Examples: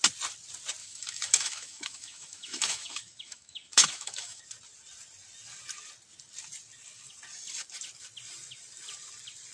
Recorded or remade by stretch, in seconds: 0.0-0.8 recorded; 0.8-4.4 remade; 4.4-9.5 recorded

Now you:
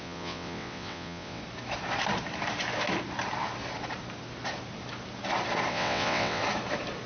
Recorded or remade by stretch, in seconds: 0.0-1.4 remade; 1.4-5.7 recorded; 5.7-6.4 remade; 6.4-7.1 recorded

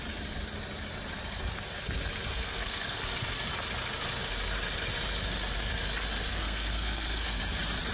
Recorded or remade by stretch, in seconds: 0.0-2.3 recorded; 2.3-3.0 remade; 3.0-6.3 recorded; 6.3-7.4 remade; 7.4-7.9 recorded